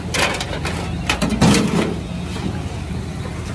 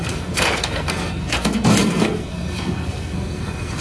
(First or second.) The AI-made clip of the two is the second